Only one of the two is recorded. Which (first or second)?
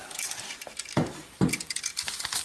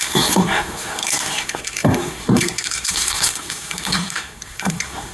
first